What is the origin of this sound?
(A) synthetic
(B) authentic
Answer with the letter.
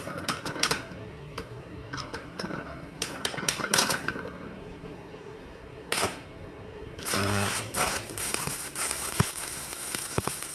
A